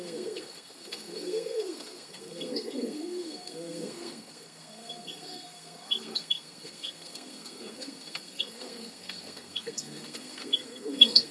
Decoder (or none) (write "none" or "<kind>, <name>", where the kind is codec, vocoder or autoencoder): codec, SNAC